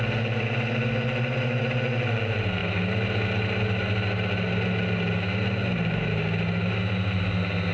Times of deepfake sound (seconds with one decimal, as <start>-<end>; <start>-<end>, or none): none